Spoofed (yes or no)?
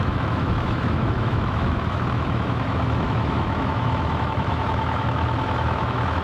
yes